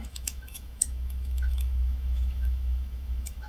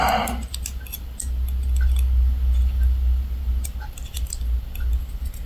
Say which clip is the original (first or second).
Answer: second